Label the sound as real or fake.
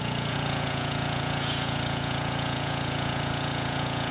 fake